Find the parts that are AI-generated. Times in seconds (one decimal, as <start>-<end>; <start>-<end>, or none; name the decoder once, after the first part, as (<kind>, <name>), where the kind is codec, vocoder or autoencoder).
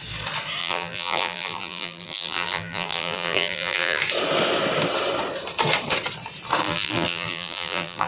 0.6-4.0 (vocoder, BigVGAN v2); 6.6-8.1